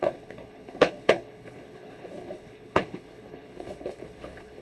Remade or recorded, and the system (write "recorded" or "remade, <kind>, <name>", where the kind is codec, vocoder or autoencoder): remade, codec, HILCodec